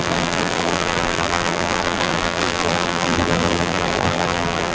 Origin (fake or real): fake